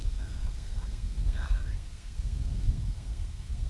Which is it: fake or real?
fake